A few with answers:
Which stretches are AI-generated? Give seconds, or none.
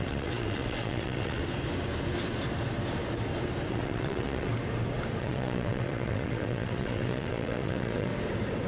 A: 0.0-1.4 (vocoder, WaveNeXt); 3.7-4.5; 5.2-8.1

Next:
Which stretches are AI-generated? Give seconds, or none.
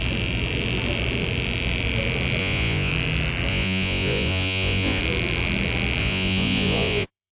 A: 2.4-2.9 (vocoder, Vocos); 3.5-5.0; 6.0-7.3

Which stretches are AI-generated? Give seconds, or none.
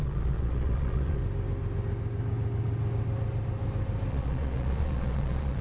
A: 0.0-1.2 (vocoder, Vocos); 4.1-5.6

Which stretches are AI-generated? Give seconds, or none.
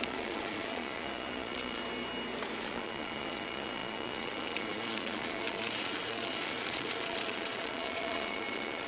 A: 0.0-1.8 (vocoder, Vocos); 2.6-8.9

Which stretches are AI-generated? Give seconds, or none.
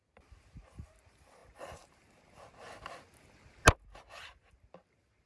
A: none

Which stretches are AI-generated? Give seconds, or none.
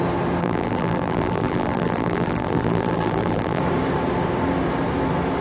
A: 0.4-3.6 (vocoder, BigVGAN v2)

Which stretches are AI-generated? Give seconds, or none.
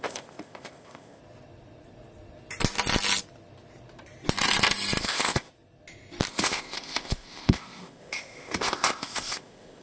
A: 0.0-1.2 (codec, ZipCodec); 5.0-5.5; 6.3-9.8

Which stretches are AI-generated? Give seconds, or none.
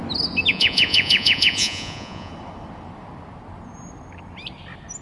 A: 0.5-2.3 (vocoder, Vocos)